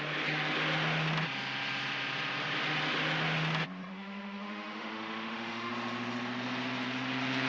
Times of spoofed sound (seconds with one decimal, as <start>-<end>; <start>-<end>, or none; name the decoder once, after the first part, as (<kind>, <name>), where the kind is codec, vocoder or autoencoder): 3.9-5.7 (autoencoder, DAC-VAE)